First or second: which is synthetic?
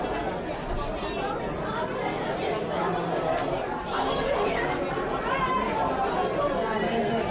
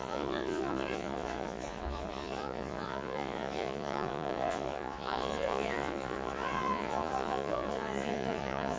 second